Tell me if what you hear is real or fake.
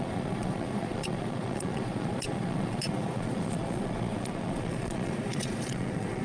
fake